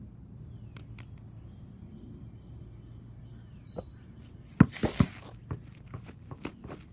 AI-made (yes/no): no